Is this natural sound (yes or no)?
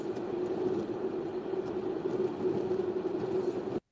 yes